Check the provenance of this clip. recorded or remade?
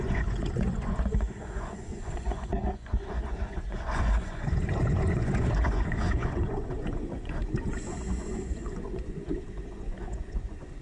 remade